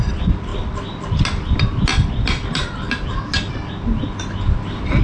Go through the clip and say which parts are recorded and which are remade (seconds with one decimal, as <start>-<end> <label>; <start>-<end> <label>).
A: 0.0-5.0 recorded